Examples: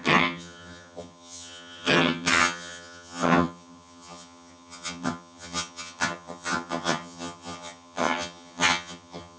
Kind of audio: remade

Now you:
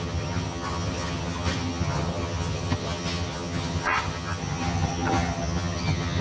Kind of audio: remade